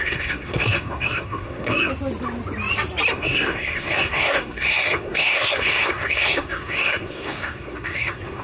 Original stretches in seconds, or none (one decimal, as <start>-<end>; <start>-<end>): 1.9-3.1